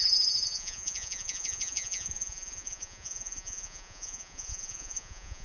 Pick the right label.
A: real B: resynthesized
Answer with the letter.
B